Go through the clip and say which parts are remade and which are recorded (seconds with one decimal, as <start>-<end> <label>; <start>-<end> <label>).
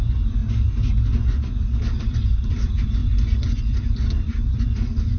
0.0-0.4 remade; 0.4-2.0 recorded; 2.0-3.0 remade; 3.0-5.2 recorded